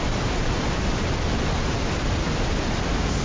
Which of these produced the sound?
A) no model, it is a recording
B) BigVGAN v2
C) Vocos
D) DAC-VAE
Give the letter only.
A